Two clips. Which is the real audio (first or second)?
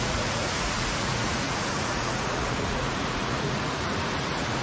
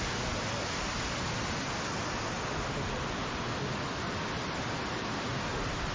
second